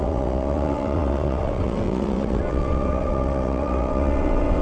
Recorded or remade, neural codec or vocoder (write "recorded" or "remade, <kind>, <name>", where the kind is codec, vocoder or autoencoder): remade, vocoder, WaveNeXt